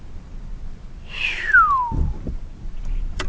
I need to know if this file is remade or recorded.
recorded